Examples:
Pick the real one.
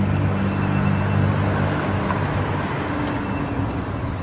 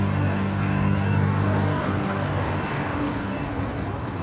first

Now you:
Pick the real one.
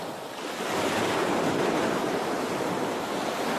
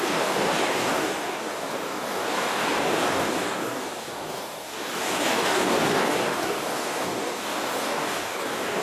first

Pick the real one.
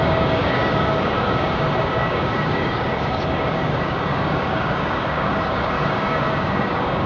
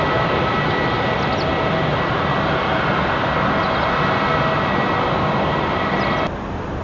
second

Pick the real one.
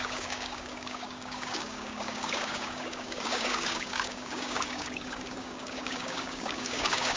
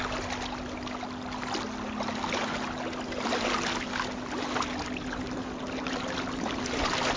second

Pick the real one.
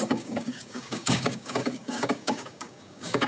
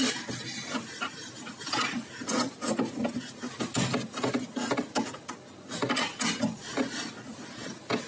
second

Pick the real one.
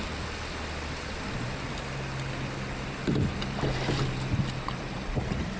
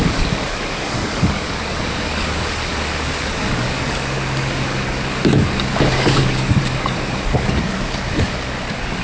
first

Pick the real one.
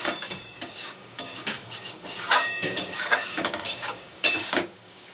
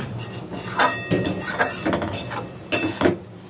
second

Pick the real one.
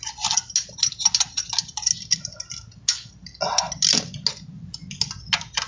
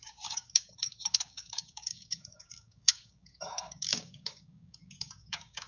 first